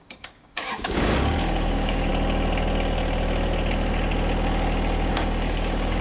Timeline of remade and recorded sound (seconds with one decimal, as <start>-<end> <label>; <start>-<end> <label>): 0.0-2.1 remade; 2.1-5.1 recorded; 5.1-6.0 remade